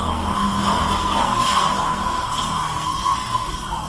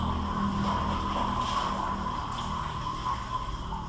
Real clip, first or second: second